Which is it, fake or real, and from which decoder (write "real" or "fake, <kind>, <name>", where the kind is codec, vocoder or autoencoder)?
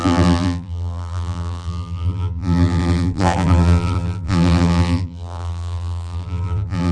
fake, vocoder, BigVGAN v2